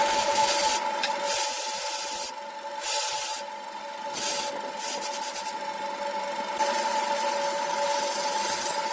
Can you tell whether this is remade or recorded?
recorded